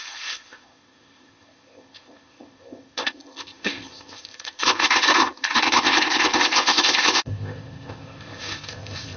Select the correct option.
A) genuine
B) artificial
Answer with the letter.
B